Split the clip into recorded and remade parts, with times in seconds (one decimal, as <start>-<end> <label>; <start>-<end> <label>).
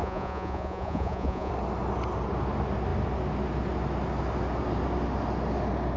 0.0-1.5 remade; 1.5-6.0 recorded